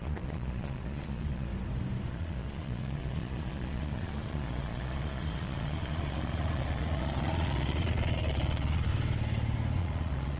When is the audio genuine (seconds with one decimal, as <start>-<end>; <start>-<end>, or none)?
1.5-2.1; 8.9-9.8